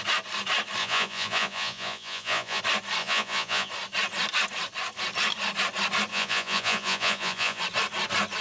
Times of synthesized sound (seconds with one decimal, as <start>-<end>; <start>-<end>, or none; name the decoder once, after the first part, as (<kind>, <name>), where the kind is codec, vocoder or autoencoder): 0.8-2.6 (vocoder, Vocos); 3.0-3.7; 6.1-7.6